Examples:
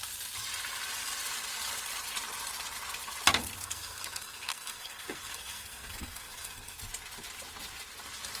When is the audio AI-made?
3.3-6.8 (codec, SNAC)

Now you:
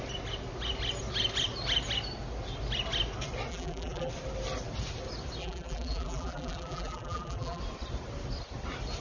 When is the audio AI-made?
3.5-4.1 (vocoder, BigVGAN v2); 5.4-7.6

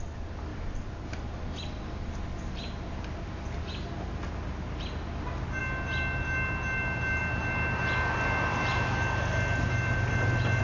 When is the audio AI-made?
none

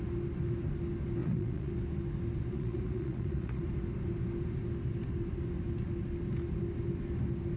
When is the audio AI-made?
1.2-1.7 (vocoder, Vocos); 2.5-3.6

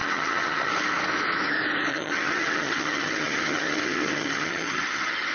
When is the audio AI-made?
0.0-0.7 (vocoder, HiFi-GAN); 1.9-5.3

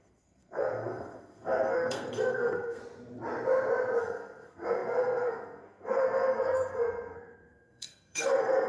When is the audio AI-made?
0.0-2.8 (codec, SNAC); 4.0-8.7

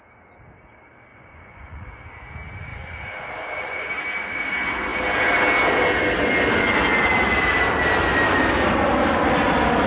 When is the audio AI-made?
1.1-1.9 (vocoder, Vocos); 2.7-3.9

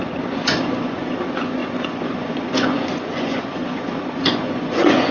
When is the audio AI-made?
0.0-5.1 (vocoder, Vocos)